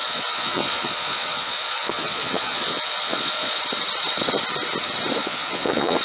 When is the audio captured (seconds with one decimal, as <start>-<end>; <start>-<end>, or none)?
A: 3.6-5.2